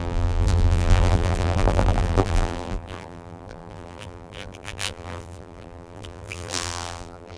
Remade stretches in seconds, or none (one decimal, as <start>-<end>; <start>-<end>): 0.0-7.4